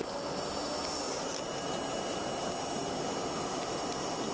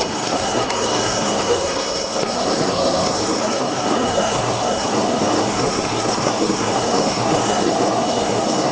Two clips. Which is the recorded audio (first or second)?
first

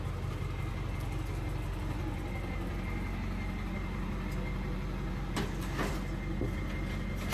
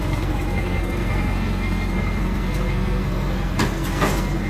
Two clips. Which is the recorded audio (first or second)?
first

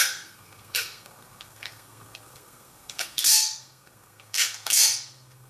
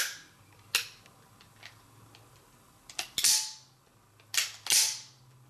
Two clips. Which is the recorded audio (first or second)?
second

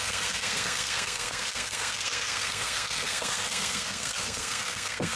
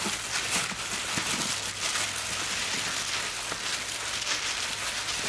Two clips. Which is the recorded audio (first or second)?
second